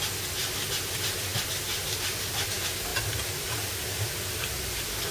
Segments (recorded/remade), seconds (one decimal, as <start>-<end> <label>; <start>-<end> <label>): 0.0-5.1 recorded